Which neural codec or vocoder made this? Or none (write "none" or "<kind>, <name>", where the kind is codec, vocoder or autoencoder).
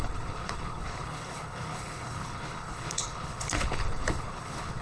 codec, HILCodec